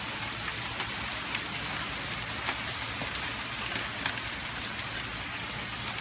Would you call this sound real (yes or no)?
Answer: yes